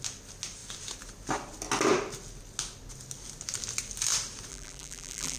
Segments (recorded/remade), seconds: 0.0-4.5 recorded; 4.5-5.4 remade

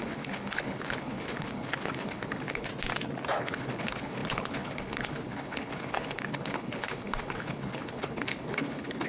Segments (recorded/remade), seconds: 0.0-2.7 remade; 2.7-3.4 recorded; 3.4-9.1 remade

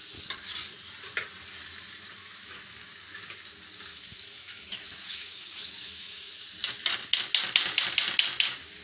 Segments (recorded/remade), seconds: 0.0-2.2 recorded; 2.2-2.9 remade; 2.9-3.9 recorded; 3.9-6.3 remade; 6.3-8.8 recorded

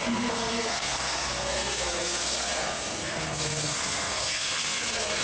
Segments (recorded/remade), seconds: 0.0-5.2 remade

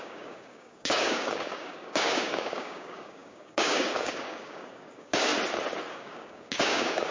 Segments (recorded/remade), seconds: 0.0-5.3 remade; 5.3-5.9 recorded; 5.9-7.1 remade

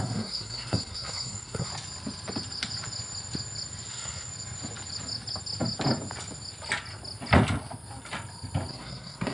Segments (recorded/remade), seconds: 0.0-1.7 remade; 1.7-3.9 recorded; 3.9-4.3 remade; 4.3-8.7 recorded; 8.7-9.3 remade

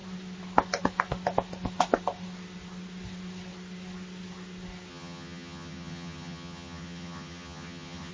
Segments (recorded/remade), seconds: 0.0-4.9 recorded; 4.9-8.1 remade

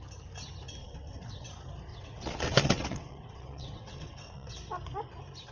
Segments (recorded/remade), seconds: 0.0-0.8 recorded; 0.8-1.5 remade; 1.5-1.9 recorded; 1.9-4.5 remade; 4.5-5.5 recorded